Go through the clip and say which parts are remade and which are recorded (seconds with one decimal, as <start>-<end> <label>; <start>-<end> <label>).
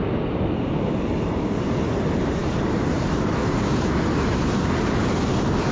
0.0-5.7 recorded